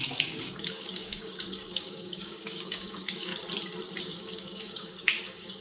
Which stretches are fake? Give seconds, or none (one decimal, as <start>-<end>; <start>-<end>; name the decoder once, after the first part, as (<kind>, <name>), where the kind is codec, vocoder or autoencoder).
0.0-3.3 (codec, DAC); 4.0-5.6